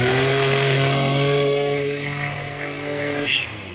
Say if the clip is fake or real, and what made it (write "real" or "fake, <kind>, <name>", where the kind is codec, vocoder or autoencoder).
fake, codec, SNAC